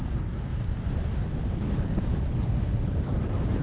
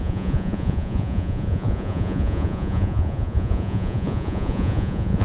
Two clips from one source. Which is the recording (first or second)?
first